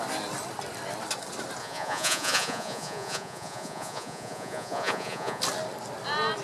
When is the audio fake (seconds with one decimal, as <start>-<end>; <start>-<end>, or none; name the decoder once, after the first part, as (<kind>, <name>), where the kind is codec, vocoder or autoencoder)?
1.6-5.4 (vocoder, Vocos)